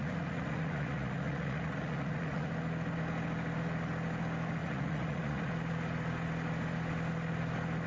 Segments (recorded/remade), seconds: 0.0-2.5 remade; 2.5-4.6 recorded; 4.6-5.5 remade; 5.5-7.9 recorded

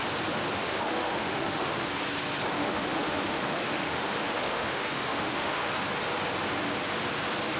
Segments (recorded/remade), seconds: 0.0-0.6 recorded; 0.6-1.9 remade; 1.9-2.6 recorded; 2.6-5.7 remade; 5.7-7.6 recorded

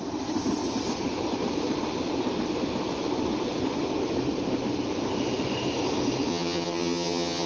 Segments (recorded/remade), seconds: 0.0-6.3 recorded; 6.3-7.5 remade

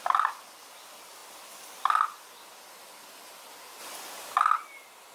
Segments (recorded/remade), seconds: 0.0-3.8 recorded; 3.8-4.4 remade; 4.4-5.1 recorded

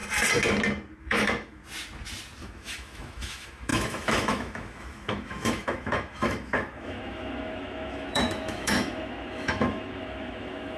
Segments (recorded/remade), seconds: 0.0-1.0 recorded; 1.0-1.6 remade; 1.6-2.4 recorded; 2.4-10.8 remade

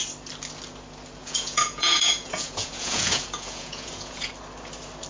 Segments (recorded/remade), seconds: 0.0-1.2 recorded; 1.2-4.3 remade; 4.3-5.1 recorded

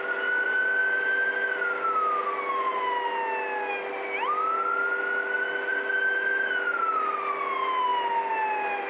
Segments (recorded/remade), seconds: 0.0-8.9 recorded